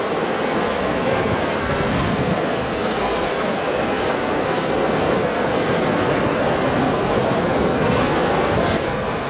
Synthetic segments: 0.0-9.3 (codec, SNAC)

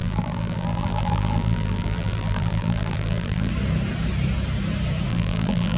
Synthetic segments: 0.0-3.5 (vocoder, BigVGAN v2); 5.1-5.8

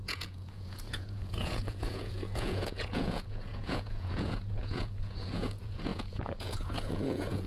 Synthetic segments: 0.0-7.5 (vocoder, Vocos)

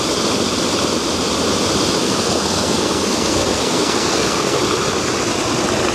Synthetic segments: 2.0-4.6 (codec, SNAC)

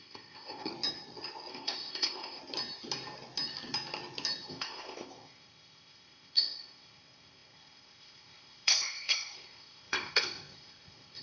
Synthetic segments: 0.0-0.7 (codec, ZipCodec); 1.5-2.4; 4.5-11.2